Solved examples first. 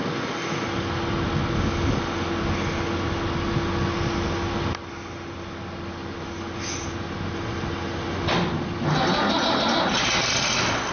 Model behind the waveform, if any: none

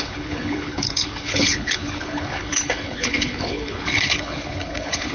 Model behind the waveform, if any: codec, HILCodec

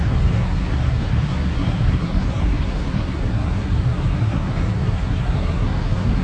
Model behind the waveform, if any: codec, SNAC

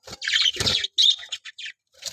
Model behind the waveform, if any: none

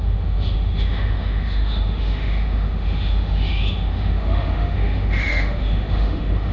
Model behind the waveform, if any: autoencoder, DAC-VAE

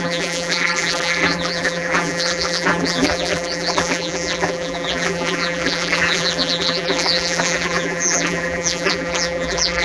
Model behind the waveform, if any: vocoder, BigVGAN v2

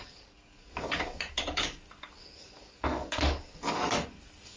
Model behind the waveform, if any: codec, DAC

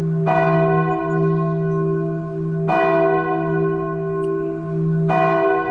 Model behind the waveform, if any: none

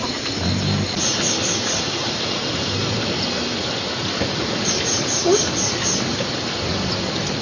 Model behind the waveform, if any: none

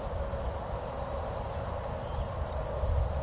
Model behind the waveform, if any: none